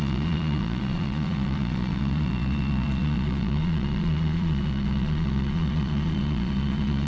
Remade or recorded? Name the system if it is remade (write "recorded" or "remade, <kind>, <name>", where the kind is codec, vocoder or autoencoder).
remade, vocoder, Vocos